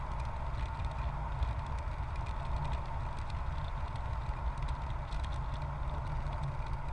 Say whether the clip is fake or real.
real